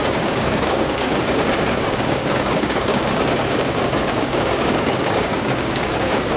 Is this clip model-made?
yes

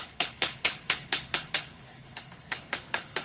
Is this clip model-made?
yes